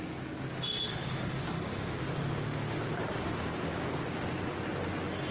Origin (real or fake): real